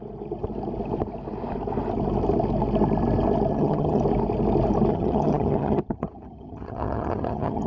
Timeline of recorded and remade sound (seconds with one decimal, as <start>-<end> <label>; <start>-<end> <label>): 0.0-3.5 recorded; 3.5-4.0 remade; 4.0-4.9 recorded; 4.9-7.7 remade